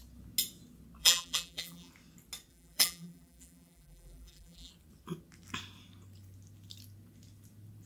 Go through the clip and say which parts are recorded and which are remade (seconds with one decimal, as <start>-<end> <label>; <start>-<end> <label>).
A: 0.0-1.0 recorded; 1.0-1.9 remade; 1.9-2.5 recorded; 2.5-4.7 remade; 4.7-7.9 recorded